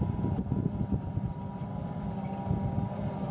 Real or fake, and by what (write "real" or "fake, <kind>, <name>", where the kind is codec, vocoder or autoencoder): real